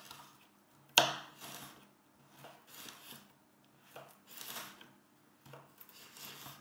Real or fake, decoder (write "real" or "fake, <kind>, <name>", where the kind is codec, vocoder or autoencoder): real